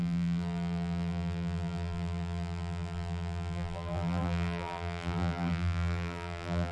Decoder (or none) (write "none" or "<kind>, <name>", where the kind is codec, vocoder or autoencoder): vocoder, BigVGAN v2